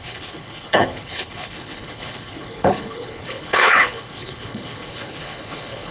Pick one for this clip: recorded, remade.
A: remade